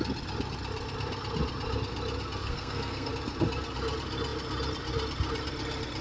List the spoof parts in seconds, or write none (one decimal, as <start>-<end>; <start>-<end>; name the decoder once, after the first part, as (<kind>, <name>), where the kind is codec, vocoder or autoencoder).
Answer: 2.4-3.1 (codec, SNAC)